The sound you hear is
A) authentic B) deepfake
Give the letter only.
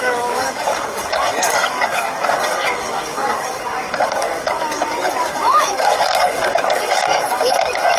B